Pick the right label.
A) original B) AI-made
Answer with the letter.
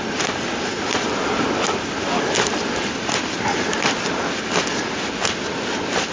A